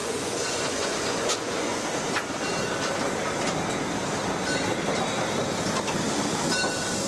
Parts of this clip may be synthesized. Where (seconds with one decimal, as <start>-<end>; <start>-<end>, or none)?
0.0-1.8